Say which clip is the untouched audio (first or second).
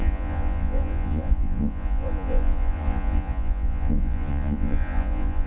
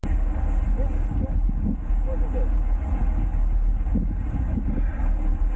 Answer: second